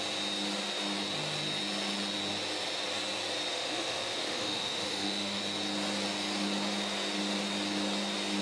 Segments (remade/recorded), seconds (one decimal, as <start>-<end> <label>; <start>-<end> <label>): 0.0-3.5 recorded; 3.5-5.4 remade; 5.4-8.4 recorded